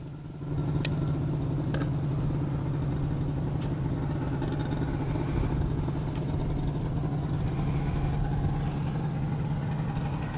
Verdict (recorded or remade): recorded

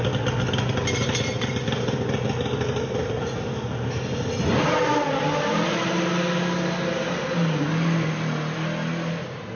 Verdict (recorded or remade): recorded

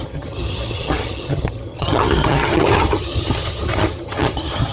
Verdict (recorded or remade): remade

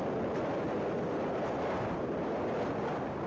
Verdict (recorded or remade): recorded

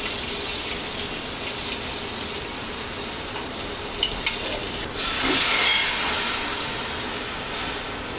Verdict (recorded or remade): recorded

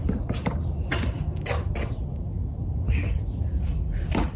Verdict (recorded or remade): recorded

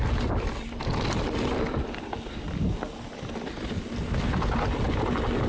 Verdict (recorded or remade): recorded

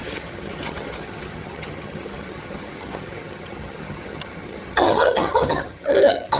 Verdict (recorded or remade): remade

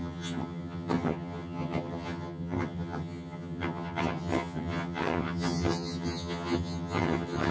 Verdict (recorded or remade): remade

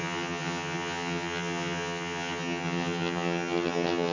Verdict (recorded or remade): remade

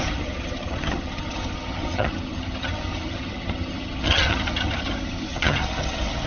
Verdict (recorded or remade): remade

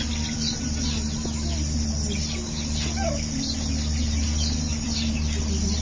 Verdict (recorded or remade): recorded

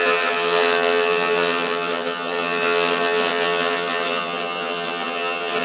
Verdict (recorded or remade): remade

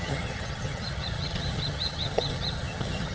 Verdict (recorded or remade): remade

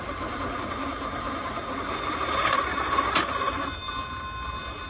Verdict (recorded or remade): recorded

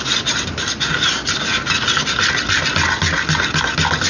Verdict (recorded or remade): recorded